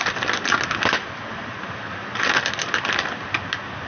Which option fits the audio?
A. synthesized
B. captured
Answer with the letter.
B